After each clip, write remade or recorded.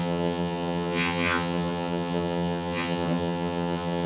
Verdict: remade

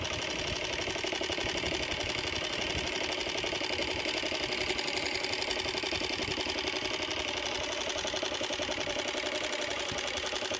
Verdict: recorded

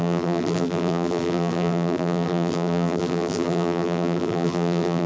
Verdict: remade